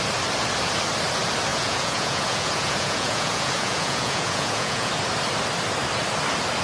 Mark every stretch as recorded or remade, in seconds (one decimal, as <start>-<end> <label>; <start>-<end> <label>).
0.0-1.5 recorded; 1.5-4.9 remade; 4.9-6.6 recorded